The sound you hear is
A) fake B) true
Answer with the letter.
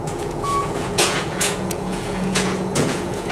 A